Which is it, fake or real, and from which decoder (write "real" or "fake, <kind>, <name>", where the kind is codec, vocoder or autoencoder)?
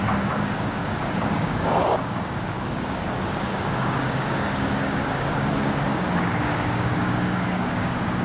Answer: fake, codec, DAC